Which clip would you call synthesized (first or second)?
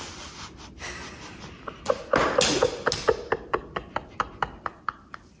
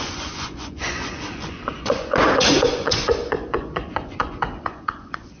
second